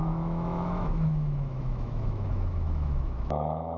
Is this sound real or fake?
fake